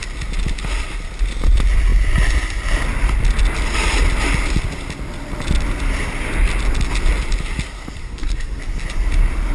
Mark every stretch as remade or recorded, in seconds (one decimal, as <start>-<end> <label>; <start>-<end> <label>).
0.0-8.0 recorded; 8.0-8.6 remade; 8.6-9.5 recorded